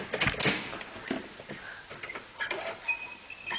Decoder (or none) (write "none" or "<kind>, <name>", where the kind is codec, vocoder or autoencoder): none